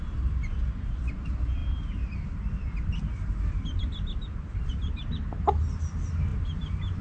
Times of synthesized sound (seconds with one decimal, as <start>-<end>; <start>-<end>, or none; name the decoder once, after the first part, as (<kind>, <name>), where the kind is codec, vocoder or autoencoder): none

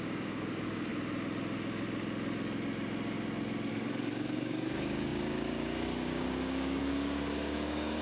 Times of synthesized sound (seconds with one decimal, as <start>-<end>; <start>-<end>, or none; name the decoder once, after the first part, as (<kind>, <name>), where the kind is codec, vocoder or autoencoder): 0.0-0.9 (codec, DAC); 3.7-8.0

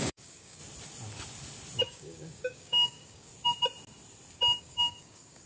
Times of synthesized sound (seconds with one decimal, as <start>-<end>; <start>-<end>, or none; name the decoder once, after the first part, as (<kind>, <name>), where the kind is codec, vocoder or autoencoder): 0.0-0.6 (codec, DAC); 1.8-3.3; 4.6-5.5

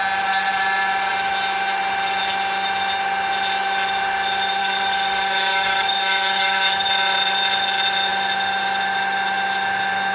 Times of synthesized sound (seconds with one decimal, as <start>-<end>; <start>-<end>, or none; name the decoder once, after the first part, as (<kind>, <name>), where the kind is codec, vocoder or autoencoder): 4.6-6.7 (codec, DAC)

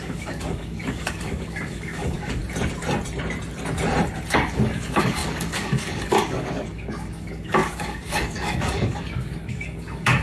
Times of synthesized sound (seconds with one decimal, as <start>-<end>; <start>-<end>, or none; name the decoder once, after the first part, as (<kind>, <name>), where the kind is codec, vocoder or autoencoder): 0.0-2.4 (codec, DAC); 4.3-10.2

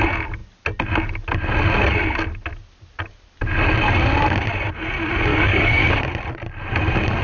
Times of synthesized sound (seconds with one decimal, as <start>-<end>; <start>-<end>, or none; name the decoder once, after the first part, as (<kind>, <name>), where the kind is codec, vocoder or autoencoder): 5.3-5.9 (codec, DAC)

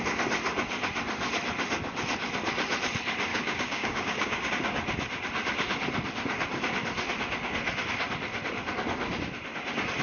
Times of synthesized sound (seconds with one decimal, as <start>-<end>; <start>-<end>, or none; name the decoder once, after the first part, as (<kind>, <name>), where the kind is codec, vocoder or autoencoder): 3.3-4.5 (codec, DAC)

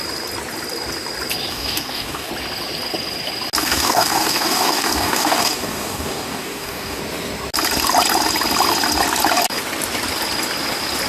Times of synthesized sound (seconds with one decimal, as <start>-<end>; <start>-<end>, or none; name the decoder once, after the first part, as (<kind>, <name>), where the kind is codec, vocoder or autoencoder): 1.5-2.3 (codec, DAC); 3.6-7.0